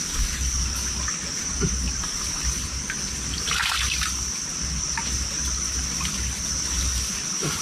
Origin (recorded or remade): recorded